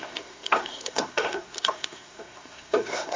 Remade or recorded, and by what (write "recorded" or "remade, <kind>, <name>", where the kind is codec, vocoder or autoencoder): remade, codec, SNAC